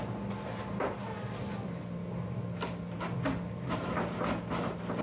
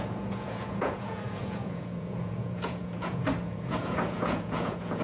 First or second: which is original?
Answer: first